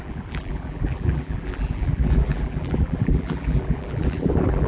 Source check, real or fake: fake